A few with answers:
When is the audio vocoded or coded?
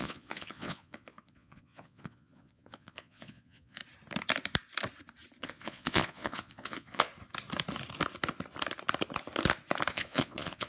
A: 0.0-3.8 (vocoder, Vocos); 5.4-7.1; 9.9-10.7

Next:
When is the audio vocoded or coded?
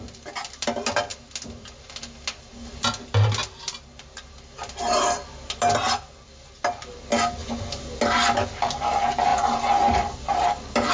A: none